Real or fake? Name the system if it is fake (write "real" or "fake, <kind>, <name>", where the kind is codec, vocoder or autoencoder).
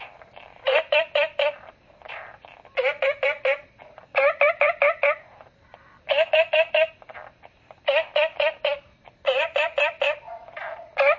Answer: fake, vocoder, BigVGAN v2